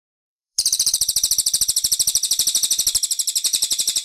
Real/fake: fake